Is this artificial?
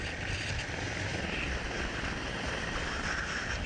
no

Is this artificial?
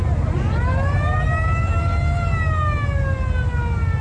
no